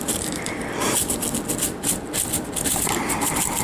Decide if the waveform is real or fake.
fake